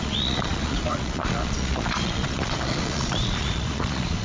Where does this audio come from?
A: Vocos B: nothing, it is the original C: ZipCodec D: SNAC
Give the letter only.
A